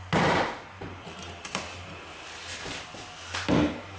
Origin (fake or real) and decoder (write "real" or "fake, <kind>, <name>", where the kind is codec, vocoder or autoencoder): real